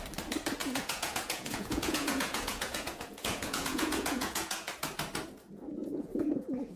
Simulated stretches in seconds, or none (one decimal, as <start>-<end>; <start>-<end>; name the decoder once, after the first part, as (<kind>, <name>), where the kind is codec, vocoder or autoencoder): 0.6-4.7 (vocoder, Vocos); 5.8-6.8